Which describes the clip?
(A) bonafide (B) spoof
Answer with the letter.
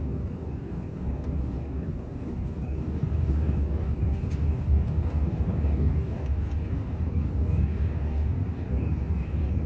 B